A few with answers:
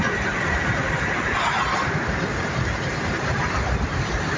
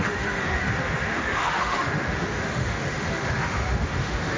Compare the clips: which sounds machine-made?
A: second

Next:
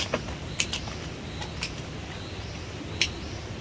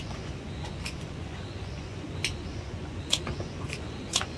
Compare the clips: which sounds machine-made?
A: second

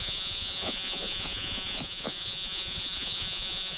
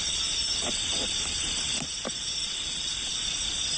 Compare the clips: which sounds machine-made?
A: first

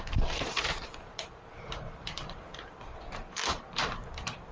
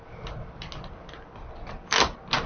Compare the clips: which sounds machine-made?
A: first